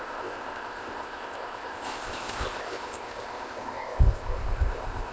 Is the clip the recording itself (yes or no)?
no